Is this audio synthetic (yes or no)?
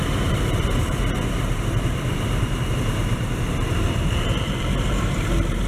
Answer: yes